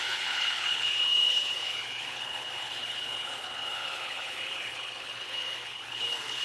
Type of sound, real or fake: fake